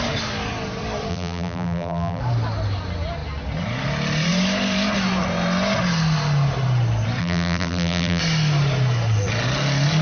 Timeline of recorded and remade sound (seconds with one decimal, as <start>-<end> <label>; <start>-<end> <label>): 0.0-1.1 recorded; 1.1-2.2 remade; 2.2-7.2 recorded; 7.2-8.2 remade; 8.2-10.0 recorded